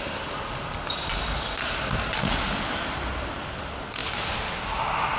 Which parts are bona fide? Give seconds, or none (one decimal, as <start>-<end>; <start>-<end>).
0.0-5.2